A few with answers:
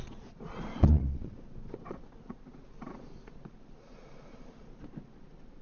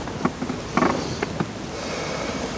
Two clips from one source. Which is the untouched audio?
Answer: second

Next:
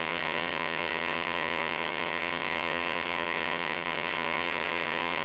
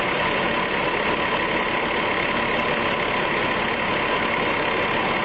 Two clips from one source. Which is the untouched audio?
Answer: second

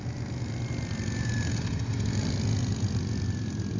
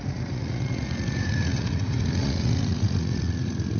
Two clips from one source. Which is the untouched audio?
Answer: first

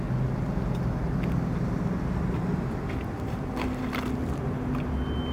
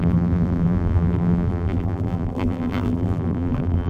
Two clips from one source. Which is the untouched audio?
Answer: first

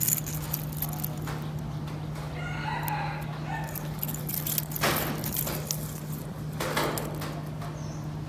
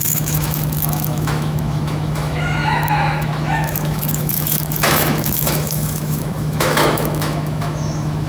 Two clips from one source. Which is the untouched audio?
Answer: first